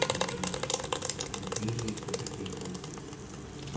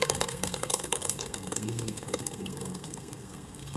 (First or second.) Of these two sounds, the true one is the first